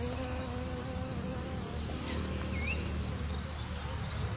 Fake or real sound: real